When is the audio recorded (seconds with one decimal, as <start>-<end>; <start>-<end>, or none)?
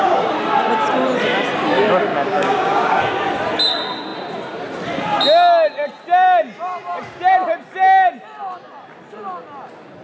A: 0.0-2.1; 3.0-10.0